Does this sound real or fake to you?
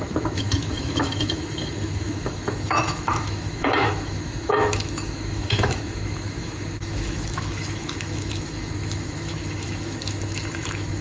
fake